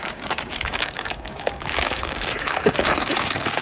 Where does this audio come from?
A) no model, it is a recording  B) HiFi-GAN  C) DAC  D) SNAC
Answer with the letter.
C